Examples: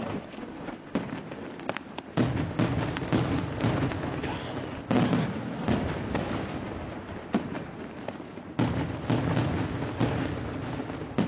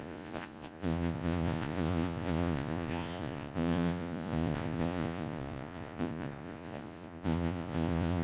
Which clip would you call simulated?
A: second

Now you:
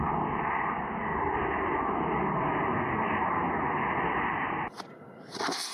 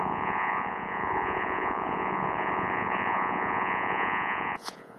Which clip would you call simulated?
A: second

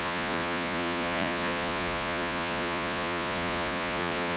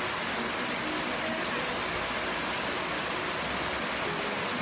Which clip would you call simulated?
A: first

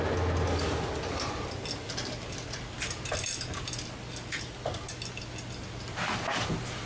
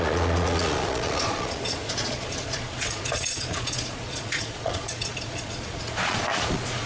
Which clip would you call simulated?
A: second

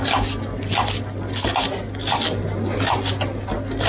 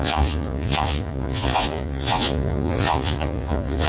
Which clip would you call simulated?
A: second